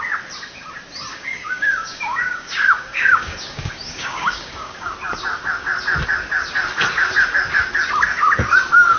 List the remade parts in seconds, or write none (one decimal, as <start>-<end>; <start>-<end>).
1.1-4.9